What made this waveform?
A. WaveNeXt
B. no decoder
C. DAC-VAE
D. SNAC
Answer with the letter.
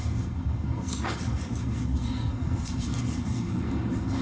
D